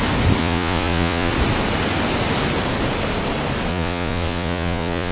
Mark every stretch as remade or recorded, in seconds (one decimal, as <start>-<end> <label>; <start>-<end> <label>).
0.0-0.4 recorded; 0.4-1.3 remade; 1.3-3.7 recorded; 3.7-5.1 remade